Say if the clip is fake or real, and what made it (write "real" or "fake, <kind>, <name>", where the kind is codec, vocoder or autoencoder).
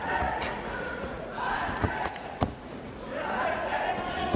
fake, vocoder, Vocos